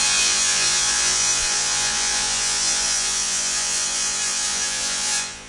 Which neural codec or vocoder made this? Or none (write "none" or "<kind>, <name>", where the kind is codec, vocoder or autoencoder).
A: vocoder, Vocos